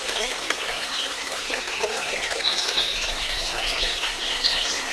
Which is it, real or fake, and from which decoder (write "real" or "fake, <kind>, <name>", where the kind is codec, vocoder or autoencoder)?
fake, codec, SNAC